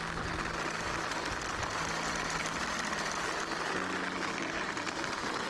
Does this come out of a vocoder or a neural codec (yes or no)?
no